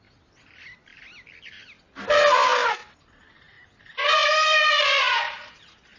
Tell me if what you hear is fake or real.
real